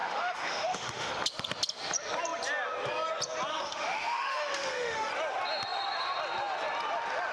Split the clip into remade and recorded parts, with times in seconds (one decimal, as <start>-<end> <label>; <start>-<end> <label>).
0.0-1.1 remade; 1.1-3.5 recorded; 3.5-5.1 remade; 5.1-7.3 recorded